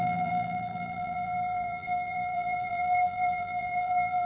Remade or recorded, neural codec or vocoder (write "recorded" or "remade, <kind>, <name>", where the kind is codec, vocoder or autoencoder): remade, vocoder, BigVGAN v2